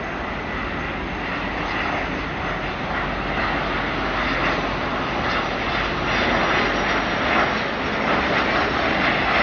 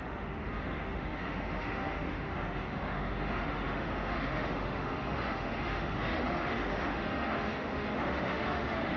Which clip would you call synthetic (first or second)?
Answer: second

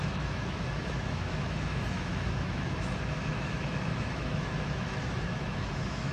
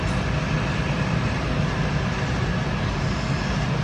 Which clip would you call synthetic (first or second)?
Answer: first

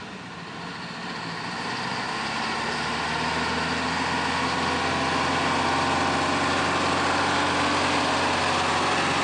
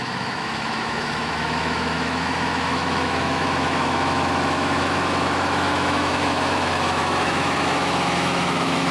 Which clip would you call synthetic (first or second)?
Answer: second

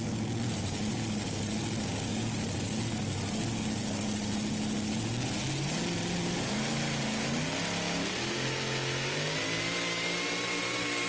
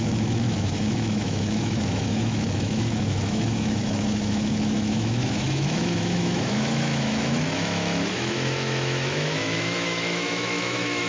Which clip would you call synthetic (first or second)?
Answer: second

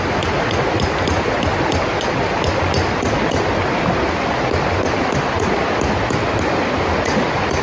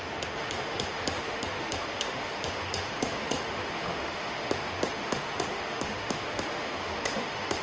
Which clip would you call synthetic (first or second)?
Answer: second